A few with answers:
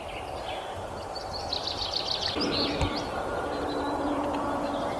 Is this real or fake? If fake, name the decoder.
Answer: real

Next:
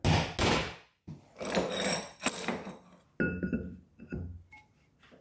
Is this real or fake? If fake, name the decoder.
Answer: real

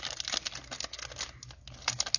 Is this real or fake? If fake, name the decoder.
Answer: real